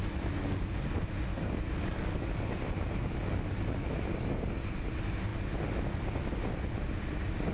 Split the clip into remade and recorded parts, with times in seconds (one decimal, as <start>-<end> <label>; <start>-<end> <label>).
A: 0.0-1.3 recorded; 1.3-2.3 remade; 2.3-4.1 recorded; 4.1-4.7 remade; 4.7-7.5 recorded

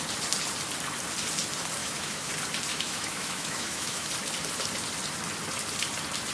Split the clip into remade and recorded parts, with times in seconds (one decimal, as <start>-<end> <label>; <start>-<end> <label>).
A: 0.0-1.8 recorded; 1.8-2.3 remade; 2.3-2.7 recorded; 2.7-4.1 remade; 4.1-6.3 recorded

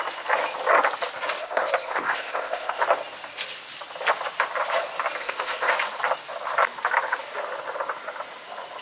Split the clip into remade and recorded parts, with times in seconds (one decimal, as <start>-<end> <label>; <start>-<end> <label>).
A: 0.0-1.4 recorded; 1.4-2.8 remade; 2.8-5.2 recorded; 5.2-5.7 remade; 5.7-8.8 recorded

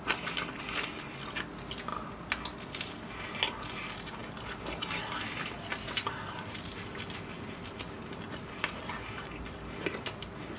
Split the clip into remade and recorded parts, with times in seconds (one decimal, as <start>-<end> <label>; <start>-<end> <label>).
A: 0.0-10.6 recorded

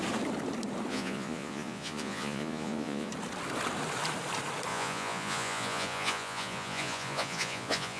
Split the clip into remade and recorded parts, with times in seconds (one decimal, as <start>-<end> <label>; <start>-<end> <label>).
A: 0.0-0.9 recorded; 0.9-3.1 remade; 3.1-4.7 recorded; 4.7-8.0 remade

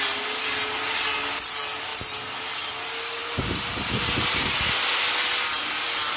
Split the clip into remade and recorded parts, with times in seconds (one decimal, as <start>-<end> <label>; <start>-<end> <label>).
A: 0.0-6.2 recorded